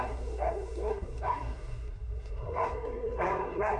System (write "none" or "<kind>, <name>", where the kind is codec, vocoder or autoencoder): codec, SNAC